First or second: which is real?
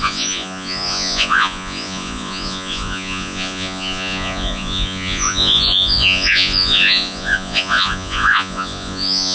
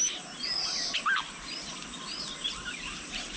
second